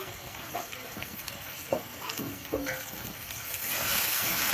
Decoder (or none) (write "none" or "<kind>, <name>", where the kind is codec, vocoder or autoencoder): codec, SNAC